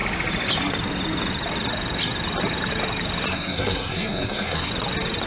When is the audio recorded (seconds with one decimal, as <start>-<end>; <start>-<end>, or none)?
0.0-3.3; 4.7-5.3